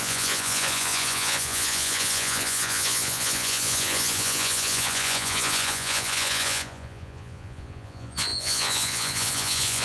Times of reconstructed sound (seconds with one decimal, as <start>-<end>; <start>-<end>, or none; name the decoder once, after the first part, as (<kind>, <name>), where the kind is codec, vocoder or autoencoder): 0.0-9.8 (vocoder, Vocos)

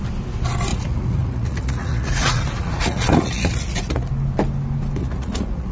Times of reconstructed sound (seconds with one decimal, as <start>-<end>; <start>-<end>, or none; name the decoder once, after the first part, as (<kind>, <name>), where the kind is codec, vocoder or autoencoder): 0.7-4.1 (vocoder, Vocos); 5.0-5.7

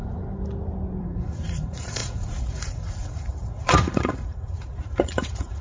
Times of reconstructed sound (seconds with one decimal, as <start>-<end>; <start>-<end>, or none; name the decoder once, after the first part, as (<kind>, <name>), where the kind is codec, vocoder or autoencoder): 1.0-5.6 (vocoder, Vocos)

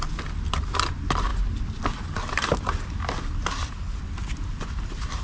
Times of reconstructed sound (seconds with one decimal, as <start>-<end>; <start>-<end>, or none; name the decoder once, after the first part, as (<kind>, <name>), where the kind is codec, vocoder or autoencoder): none

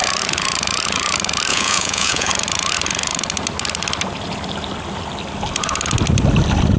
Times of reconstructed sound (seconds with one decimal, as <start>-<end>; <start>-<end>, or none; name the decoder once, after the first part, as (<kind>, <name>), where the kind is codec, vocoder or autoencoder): 1.5-2.3 (vocoder, Vocos)